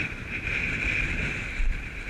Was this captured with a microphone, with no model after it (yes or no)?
no